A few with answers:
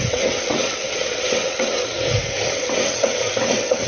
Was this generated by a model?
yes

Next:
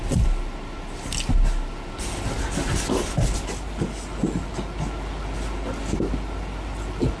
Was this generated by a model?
no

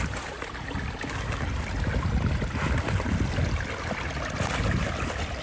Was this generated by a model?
no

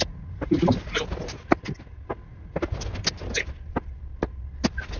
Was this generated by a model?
no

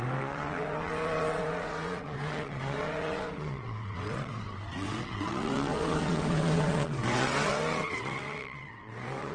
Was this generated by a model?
yes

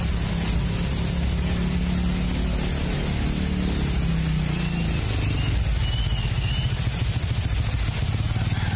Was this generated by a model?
no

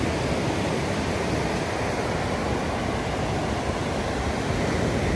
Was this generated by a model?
no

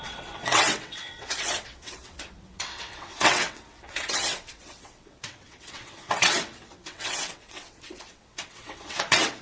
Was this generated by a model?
yes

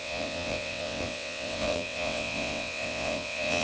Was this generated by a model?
yes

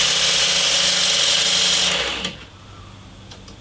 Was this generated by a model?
no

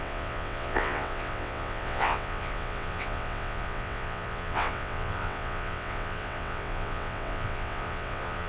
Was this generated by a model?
yes